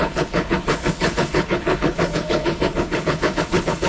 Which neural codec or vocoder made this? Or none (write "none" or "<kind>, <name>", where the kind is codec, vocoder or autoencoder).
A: codec, HILCodec